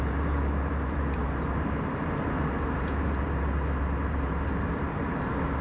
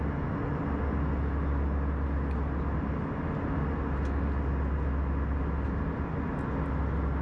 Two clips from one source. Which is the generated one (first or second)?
first